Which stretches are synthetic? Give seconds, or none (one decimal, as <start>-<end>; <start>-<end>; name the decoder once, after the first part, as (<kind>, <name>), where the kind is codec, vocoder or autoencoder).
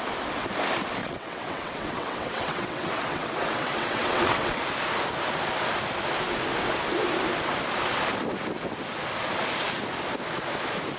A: 1.0-4.6 (vocoder, WaveNeXt)